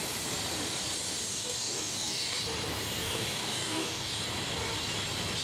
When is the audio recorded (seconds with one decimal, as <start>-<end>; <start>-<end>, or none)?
0.0-1.3; 2.4-3.0; 4.1-5.4